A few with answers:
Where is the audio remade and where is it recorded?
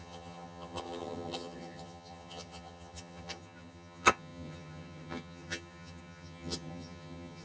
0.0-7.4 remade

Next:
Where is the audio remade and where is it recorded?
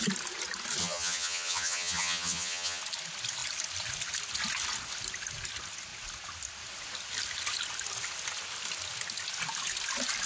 0.0-0.8 recorded; 0.8-2.8 remade; 2.8-10.3 recorded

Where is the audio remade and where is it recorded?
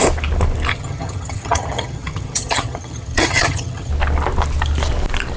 0.0-0.7 recorded; 0.7-3.9 remade; 3.9-5.4 recorded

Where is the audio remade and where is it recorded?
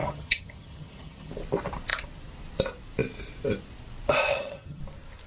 0.0-1.3 remade; 1.3-4.3 recorded; 4.3-4.8 remade; 4.8-5.3 recorded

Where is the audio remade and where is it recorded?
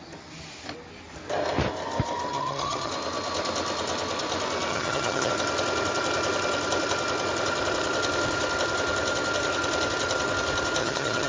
0.0-2.3 recorded; 2.3-2.9 remade; 2.9-4.7 recorded; 4.7-5.3 remade; 5.3-10.8 recorded; 10.8-11.3 remade